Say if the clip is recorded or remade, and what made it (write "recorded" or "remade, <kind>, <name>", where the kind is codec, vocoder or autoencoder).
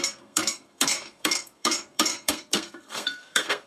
remade, codec, SNAC